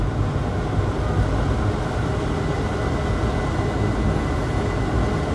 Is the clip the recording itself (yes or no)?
yes